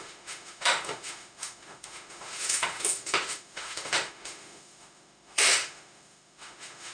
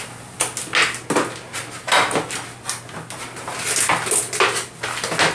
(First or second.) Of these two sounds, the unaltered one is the second